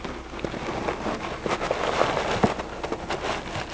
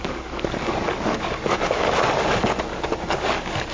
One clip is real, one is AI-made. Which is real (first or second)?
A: first